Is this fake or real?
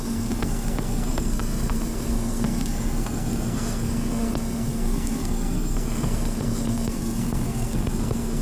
fake